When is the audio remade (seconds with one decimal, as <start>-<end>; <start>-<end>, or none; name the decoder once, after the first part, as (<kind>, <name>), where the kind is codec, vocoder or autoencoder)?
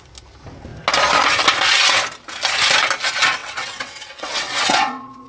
3.4-5.3 (vocoder, WaveNeXt)